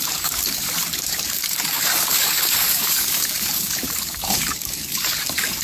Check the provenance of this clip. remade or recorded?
remade